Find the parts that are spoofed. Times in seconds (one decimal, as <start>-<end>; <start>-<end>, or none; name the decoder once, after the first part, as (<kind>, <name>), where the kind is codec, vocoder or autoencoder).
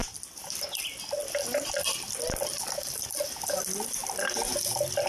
none